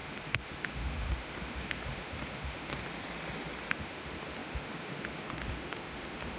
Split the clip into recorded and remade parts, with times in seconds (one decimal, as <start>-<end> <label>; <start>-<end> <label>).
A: 0.0-2.7 remade; 2.7-3.7 recorded; 3.7-6.4 remade